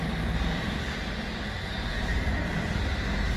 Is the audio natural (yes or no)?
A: yes